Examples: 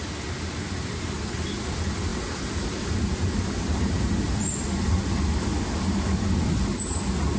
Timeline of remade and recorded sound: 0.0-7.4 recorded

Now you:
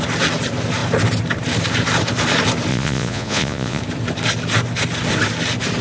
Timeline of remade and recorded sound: 0.0-2.7 recorded; 2.7-3.8 remade; 3.8-5.8 recorded